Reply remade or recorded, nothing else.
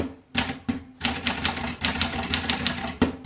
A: recorded